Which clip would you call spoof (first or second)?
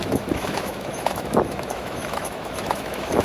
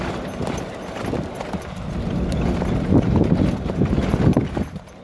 first